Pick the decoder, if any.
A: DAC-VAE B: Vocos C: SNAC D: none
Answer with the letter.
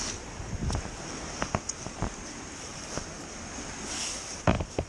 D